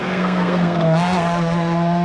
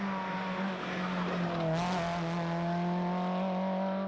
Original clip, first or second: second